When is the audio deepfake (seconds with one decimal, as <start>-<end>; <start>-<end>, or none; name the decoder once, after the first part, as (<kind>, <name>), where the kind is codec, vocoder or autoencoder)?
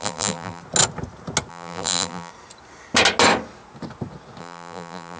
0.0-0.6 (vocoder, BigVGAN v2); 1.5-2.3; 4.4-5.2